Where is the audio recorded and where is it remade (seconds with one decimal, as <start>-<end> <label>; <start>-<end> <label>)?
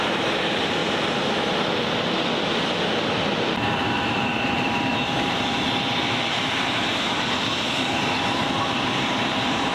0.0-0.8 remade; 0.8-3.1 recorded; 3.1-9.7 remade